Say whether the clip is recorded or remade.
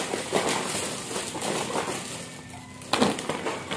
recorded